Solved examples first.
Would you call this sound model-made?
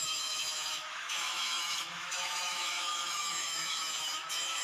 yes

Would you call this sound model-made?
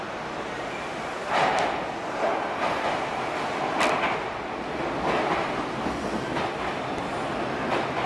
no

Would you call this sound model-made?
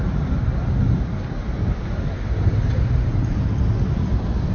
no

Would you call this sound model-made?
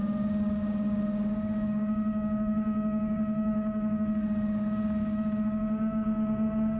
yes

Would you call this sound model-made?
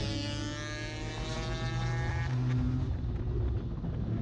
no